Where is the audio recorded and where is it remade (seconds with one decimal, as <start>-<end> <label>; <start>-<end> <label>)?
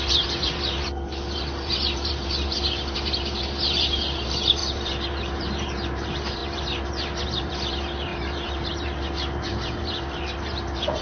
0.0-11.0 remade